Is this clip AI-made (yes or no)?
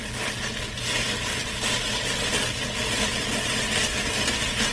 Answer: no